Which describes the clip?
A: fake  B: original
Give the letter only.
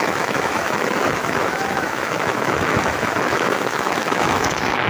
A